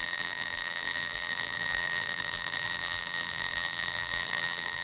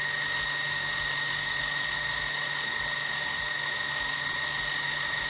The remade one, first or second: first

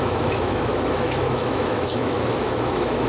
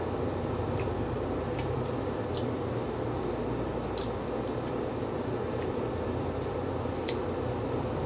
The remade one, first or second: first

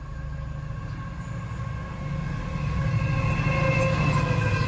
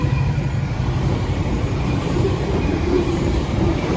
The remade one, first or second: second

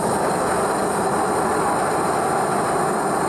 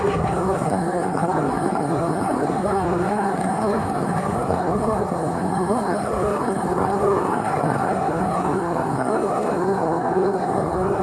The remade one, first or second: second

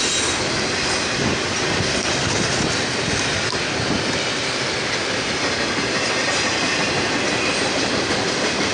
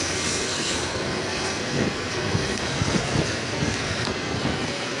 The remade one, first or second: second